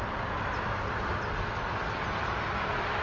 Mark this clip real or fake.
real